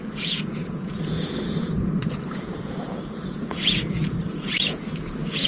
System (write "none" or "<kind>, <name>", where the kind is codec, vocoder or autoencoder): vocoder, Vocos